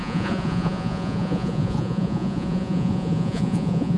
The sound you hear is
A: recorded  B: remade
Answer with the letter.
B